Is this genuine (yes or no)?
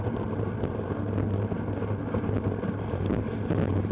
yes